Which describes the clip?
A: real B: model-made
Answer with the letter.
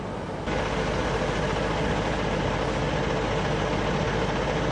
A